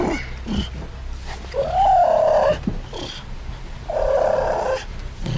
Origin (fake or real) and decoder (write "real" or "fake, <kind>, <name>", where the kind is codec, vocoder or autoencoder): real